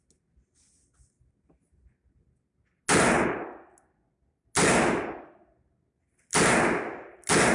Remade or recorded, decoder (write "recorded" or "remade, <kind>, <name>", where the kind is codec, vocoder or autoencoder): recorded